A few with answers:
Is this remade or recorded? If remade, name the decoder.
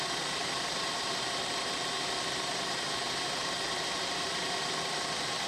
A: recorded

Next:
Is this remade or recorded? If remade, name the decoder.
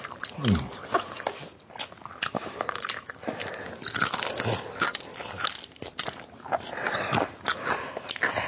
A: recorded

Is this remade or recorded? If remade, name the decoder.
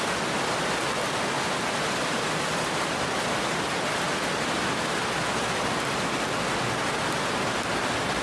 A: recorded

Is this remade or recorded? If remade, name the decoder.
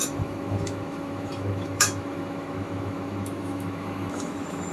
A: remade, autoencoder, DAC-VAE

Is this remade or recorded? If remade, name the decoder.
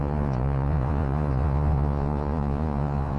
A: remade, vocoder, Vocos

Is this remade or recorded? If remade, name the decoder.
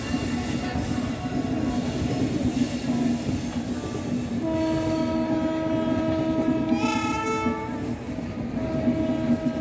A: recorded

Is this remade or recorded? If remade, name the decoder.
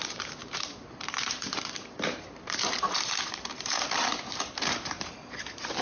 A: remade, vocoder, BigVGAN v2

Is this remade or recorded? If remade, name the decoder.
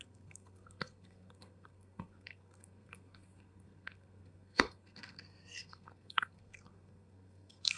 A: remade, codec, SNAC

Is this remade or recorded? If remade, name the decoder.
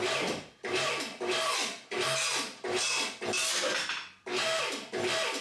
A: recorded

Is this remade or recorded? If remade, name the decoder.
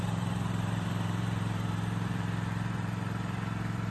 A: remade, vocoder, BigVGAN v2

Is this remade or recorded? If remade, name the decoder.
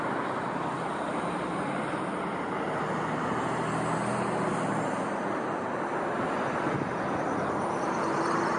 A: recorded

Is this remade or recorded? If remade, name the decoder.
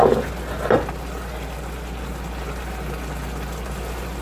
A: recorded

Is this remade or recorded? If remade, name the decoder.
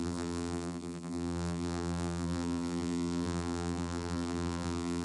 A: remade, vocoder, BigVGAN v2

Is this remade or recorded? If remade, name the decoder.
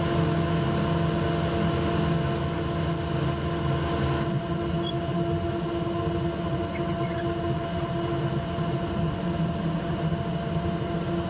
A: recorded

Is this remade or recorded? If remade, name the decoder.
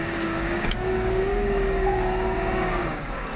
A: remade, codec, DAC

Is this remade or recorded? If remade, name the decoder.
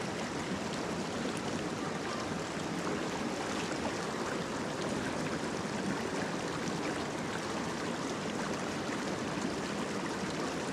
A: recorded